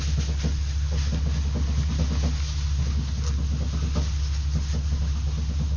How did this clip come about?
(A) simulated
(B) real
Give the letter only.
B